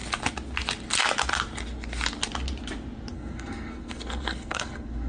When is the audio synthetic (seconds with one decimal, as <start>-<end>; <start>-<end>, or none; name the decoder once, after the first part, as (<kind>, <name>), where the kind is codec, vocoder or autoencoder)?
3.1-5.1 (codec, SNAC)